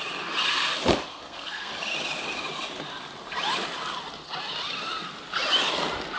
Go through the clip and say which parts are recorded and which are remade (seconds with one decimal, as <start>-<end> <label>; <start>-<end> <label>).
0.0-1.1 recorded; 1.1-1.7 remade; 1.7-6.2 recorded